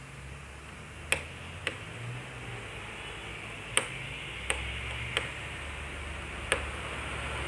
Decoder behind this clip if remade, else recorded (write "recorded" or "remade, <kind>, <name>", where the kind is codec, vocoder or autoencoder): recorded